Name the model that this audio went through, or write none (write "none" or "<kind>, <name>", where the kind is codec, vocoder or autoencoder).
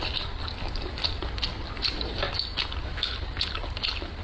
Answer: none